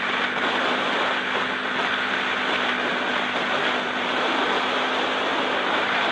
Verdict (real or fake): real